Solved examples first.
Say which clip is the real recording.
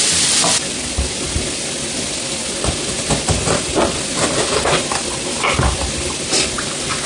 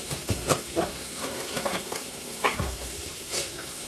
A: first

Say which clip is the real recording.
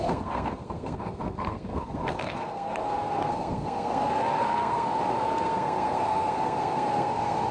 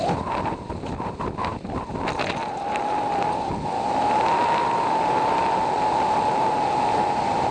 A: second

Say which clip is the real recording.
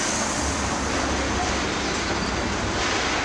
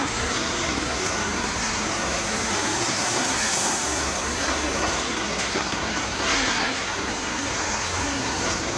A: first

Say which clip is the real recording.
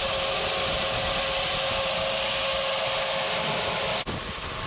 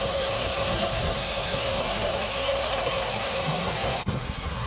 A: first